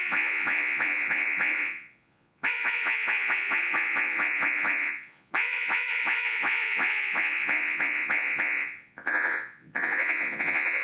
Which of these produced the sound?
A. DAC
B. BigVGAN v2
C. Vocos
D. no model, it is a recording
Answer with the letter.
C